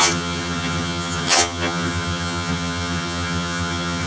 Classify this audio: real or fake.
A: fake